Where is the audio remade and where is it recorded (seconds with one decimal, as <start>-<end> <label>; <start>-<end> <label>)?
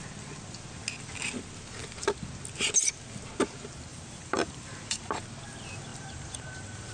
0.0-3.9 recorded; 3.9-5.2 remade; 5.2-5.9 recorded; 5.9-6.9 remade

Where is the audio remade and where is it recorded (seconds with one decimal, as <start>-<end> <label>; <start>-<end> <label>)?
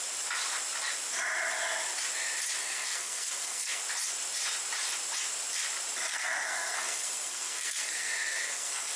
0.0-2.6 recorded; 2.6-3.8 remade; 3.8-6.1 recorded; 6.1-9.0 remade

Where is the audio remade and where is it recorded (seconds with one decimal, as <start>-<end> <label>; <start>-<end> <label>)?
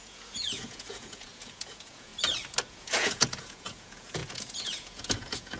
0.0-2.1 remade; 2.1-2.7 recorded; 2.7-5.6 remade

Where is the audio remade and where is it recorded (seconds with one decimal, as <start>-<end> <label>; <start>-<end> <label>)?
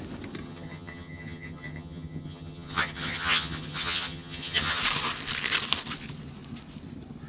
0.0-0.4 recorded; 0.4-4.8 remade; 4.8-7.3 recorded